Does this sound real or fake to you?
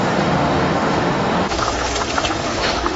fake